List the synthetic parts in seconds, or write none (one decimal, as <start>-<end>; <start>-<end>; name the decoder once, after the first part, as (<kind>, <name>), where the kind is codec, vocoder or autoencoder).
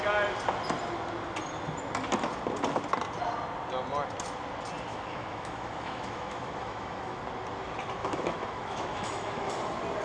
4.9-7.2 (autoencoder, DAC-VAE); 8.0-9.5